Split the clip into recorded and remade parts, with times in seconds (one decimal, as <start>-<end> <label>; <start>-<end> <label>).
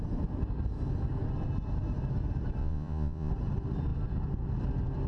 0.0-2.6 recorded; 2.6-3.3 remade; 3.3-5.1 recorded